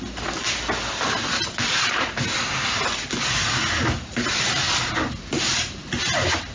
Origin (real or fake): real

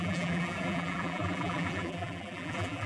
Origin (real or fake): fake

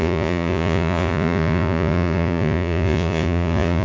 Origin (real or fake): fake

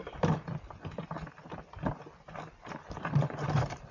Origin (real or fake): real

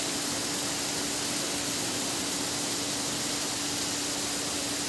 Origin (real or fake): real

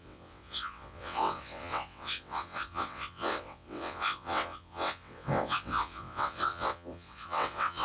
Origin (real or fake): fake